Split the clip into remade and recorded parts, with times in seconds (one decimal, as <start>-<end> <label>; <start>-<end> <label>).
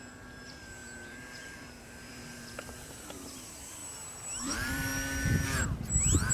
0.0-3.8 remade; 3.8-4.4 recorded; 4.4-4.9 remade; 4.9-6.3 recorded